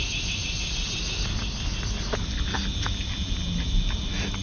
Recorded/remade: recorded